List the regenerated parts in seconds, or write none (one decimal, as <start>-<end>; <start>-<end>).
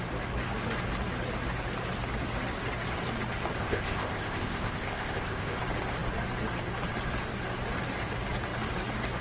3.6-5.6